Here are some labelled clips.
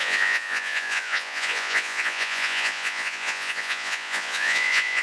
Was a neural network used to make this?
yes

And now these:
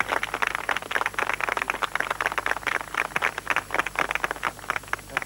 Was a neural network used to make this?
no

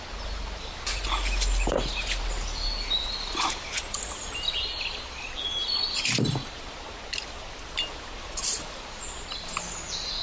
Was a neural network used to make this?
no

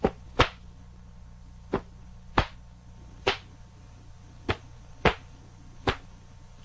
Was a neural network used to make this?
no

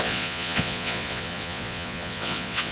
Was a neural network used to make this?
yes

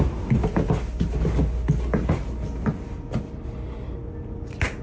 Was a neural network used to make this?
no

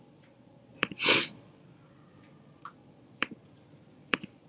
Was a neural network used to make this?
yes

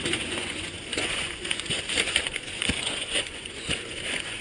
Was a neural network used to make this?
yes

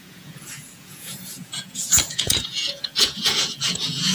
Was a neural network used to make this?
yes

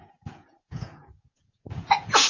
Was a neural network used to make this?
yes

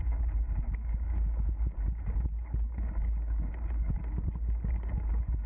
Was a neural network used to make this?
no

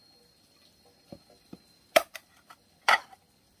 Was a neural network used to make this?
no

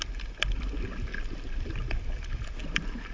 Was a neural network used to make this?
no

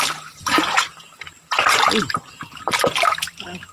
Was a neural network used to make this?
no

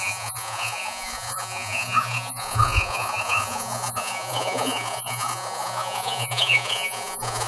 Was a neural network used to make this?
yes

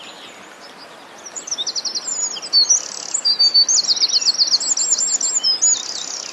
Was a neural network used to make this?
no